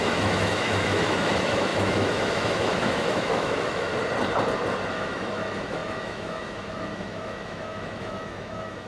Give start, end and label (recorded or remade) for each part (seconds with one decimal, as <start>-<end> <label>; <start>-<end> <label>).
0.0-3.9 remade; 3.9-4.9 recorded; 4.9-8.9 remade